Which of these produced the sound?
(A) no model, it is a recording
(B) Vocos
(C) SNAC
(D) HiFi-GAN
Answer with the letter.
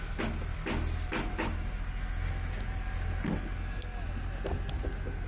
A